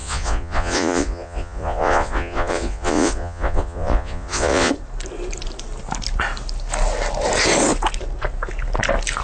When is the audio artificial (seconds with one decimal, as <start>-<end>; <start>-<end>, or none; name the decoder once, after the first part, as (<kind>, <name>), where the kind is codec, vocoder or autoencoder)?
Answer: 0.0-4.7 (vocoder, Vocos)